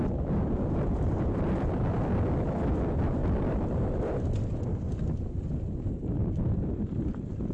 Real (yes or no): no